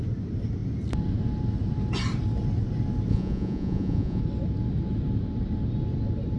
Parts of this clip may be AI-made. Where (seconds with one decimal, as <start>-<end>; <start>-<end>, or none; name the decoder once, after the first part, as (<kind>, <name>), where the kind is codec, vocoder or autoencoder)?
3.1-4.2 (vocoder, Vocos)